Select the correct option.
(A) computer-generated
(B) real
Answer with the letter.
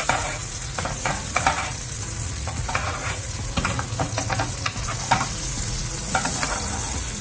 A